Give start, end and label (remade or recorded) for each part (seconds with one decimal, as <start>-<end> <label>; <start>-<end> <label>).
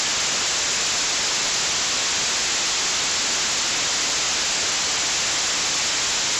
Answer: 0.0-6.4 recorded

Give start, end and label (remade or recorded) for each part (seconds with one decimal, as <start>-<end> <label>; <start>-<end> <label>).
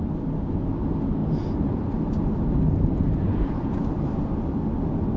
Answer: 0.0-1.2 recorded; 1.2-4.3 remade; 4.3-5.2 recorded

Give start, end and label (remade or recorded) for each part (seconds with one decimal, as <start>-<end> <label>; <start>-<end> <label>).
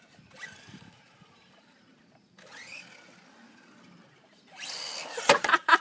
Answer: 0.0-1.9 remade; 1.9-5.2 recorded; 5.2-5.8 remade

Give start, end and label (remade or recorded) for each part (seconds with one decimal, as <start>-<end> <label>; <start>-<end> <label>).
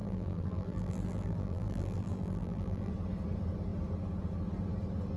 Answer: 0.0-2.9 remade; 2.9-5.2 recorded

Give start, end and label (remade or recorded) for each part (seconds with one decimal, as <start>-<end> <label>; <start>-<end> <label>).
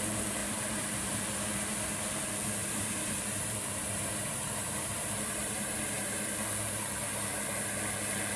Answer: 0.0-0.4 recorded; 0.4-1.2 remade; 1.2-2.6 recorded; 2.6-6.2 remade; 6.2-8.4 recorded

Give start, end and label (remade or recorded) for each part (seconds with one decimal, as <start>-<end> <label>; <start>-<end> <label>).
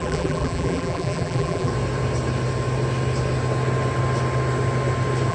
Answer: 0.0-1.7 remade; 1.7-5.3 recorded